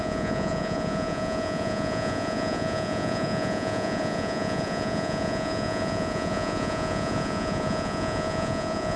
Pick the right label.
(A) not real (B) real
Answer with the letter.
A